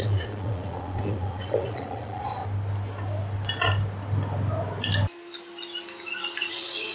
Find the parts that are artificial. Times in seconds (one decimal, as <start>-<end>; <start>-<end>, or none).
0.0-2.4; 6.5-6.9